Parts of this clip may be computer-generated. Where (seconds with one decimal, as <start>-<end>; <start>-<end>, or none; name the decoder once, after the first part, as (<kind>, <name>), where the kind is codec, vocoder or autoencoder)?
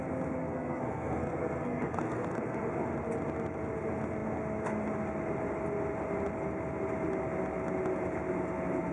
0.4-2.7 (codec, SNAC)